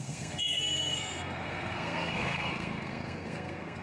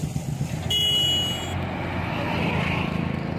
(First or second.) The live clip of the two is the second